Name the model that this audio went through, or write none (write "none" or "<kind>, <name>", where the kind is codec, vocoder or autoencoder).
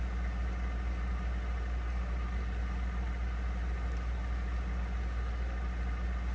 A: none